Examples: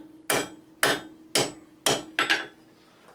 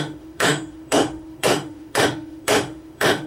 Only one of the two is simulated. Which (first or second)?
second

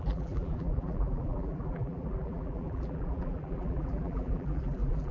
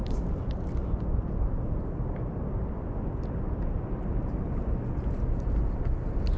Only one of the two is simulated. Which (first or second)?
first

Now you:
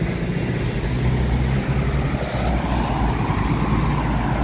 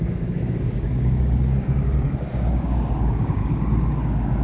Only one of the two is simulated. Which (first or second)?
second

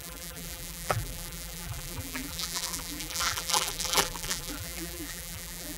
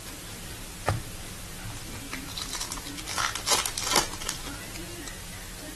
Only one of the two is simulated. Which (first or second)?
first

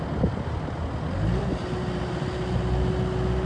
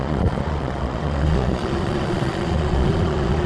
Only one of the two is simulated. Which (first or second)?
second